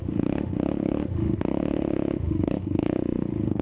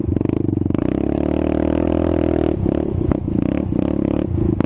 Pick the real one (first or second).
second